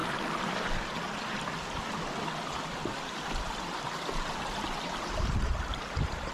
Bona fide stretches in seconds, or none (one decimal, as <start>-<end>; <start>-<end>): 0.0-3.2